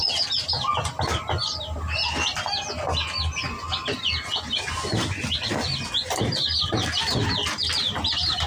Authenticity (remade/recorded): recorded